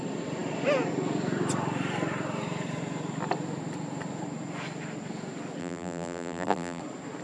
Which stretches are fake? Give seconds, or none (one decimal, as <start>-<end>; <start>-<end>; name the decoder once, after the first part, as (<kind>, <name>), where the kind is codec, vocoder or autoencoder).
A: 5.6-6.8 (vocoder, BigVGAN v2)